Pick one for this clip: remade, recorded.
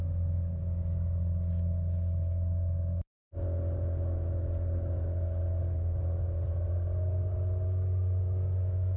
recorded